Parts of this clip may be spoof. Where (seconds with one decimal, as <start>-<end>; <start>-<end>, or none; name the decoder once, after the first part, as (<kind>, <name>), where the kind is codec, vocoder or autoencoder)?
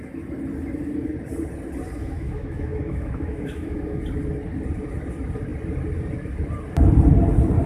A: 2.0-4.0 (autoencoder, DAC-VAE)